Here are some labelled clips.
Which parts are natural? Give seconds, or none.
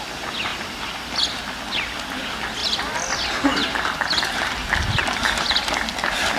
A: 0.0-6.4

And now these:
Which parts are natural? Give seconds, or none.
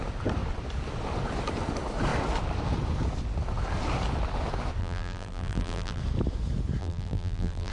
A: 0.0-4.8; 6.0-6.8